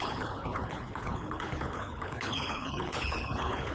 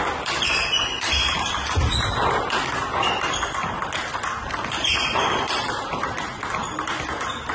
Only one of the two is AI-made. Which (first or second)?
first